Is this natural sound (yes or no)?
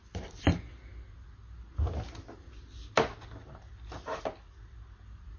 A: yes